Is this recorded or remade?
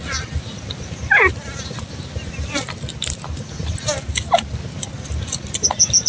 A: recorded